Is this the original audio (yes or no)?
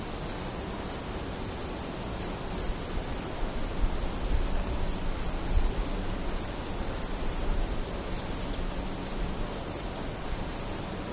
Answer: yes